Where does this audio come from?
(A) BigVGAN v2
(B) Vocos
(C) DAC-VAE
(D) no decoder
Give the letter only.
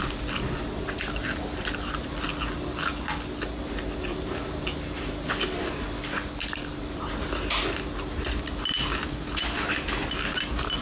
D